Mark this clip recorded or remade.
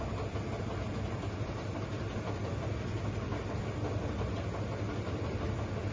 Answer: recorded